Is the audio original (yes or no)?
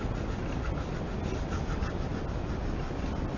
yes